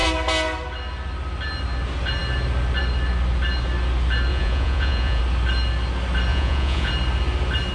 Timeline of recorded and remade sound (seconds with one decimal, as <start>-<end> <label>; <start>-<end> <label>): 0.0-4.3 recorded; 4.3-5.2 remade; 5.2-6.3 recorded; 6.3-6.9 remade; 6.9-7.7 recorded